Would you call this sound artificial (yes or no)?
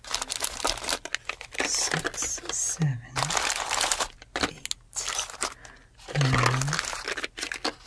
no